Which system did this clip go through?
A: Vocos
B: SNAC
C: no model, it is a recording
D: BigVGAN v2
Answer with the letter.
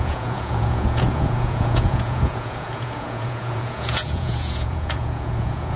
A